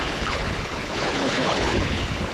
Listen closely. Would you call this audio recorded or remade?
remade